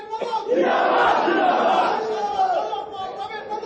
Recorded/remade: recorded